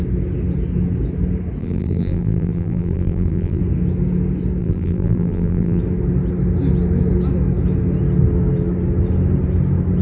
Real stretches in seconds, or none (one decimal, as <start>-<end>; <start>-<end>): 0.0-1.6; 3.6-4.6; 5.8-10.0